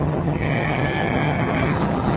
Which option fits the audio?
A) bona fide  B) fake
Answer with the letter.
B